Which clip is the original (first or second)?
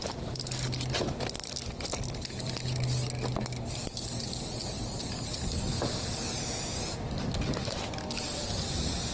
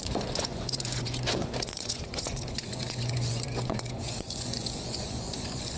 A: first